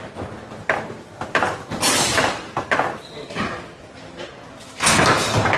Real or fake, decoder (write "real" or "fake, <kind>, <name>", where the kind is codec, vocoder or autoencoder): real